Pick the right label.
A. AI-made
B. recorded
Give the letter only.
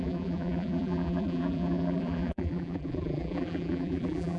A